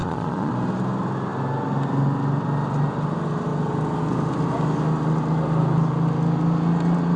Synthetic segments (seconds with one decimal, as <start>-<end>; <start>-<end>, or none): 0.0-0.5